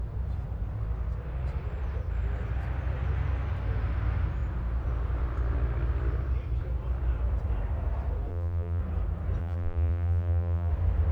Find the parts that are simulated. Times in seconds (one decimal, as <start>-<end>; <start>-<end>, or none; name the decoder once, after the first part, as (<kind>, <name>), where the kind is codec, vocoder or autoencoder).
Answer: 8.3-8.8 (vocoder, BigVGAN v2); 9.4-10.7